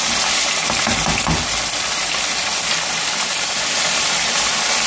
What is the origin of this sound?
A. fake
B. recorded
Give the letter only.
B